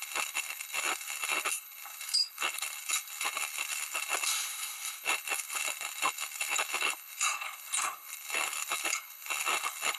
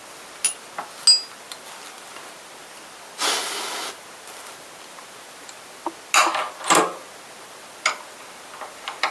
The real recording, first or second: second